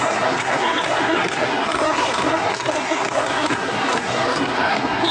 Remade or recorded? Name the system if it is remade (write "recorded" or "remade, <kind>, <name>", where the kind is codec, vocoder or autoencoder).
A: remade, codec, SNAC